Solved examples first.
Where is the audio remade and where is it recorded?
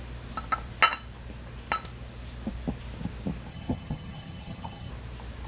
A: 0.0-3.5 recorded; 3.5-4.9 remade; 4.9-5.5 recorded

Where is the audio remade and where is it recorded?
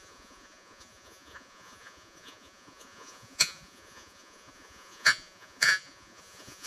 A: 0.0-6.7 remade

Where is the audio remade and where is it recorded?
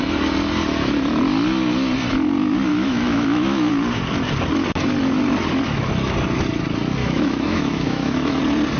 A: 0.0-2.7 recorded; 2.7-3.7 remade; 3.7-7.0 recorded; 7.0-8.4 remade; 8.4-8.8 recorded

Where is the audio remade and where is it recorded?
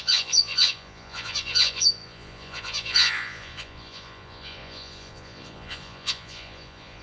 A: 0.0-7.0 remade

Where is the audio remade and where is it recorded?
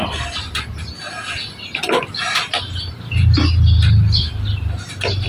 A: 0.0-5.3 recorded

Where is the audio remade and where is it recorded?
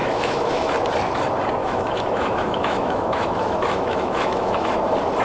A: 0.0-0.7 remade; 0.7-1.6 recorded; 1.6-4.7 remade; 4.7-5.2 recorded